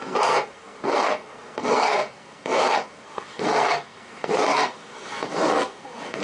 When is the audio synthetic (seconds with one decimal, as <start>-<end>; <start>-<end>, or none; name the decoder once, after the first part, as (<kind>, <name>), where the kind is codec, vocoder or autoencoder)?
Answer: 0.0-6.2 (codec, SNAC)